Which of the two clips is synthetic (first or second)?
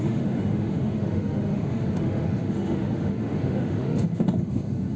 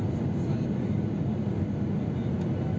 first